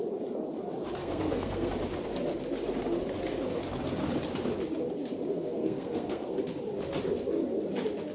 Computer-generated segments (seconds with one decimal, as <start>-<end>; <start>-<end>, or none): 1.0-1.7; 5.3-6.4